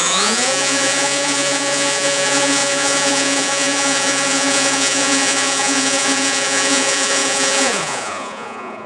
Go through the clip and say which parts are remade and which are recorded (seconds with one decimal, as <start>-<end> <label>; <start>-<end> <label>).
0.0-8.9 remade